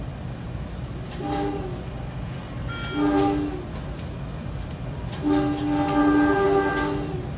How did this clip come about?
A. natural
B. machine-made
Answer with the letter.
A